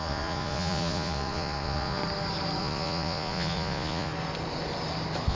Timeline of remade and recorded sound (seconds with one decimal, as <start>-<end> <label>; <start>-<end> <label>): 0.0-2.0 remade; 2.0-2.6 recorded; 2.6-4.1 remade; 4.1-5.3 recorded